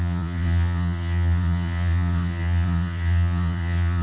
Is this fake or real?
fake